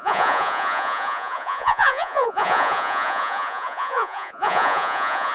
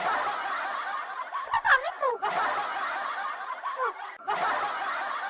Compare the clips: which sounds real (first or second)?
second